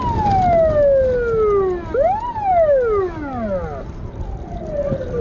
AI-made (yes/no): no